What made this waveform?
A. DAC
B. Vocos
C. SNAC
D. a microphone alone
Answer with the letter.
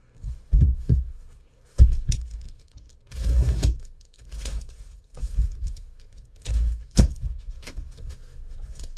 C